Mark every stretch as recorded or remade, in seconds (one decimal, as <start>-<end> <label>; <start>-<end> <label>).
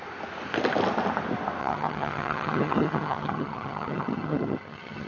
0.0-1.6 recorded; 1.6-5.1 remade